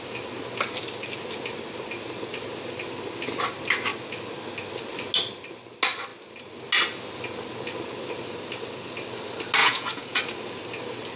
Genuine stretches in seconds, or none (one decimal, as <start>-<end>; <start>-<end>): 0.0-9.6; 10.2-11.2